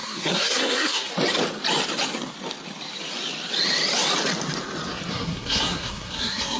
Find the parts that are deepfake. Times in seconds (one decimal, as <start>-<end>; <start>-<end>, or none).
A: 0.0-1.1; 5.1-6.6

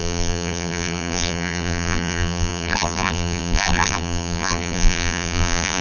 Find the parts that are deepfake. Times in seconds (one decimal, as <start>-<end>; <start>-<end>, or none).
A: 0.0-5.8

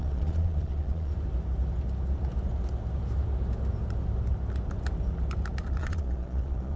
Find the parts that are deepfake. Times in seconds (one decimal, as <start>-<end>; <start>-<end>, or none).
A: 0.0-1.1; 5.8-6.8

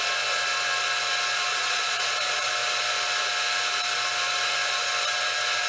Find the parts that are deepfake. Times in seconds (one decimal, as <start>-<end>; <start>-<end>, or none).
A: 1.5-2.5

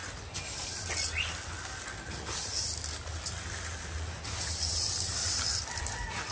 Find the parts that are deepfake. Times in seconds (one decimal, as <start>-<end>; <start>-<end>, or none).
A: none

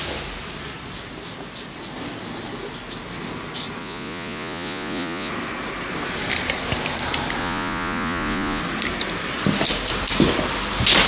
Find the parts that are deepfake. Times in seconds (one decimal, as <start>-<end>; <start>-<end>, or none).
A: 3.8-5.3; 7.4-8.6

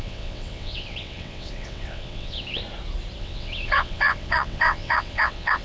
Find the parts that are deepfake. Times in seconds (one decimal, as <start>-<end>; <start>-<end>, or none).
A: 0.0-2.6; 3.2-5.6